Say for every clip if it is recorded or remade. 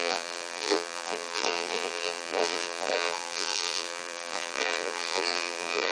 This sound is remade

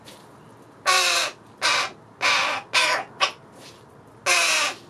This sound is recorded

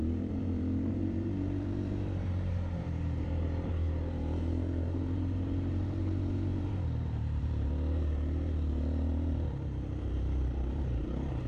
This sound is remade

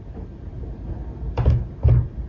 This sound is recorded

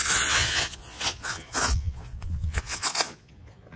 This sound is remade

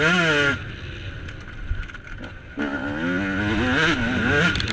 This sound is recorded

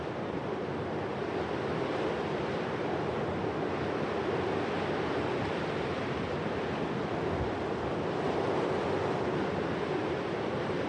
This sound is recorded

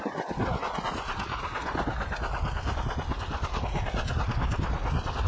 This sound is recorded